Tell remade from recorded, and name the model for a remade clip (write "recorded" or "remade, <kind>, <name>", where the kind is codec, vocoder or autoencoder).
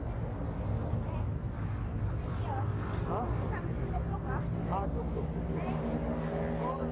recorded